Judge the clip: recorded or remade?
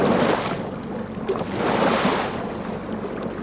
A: recorded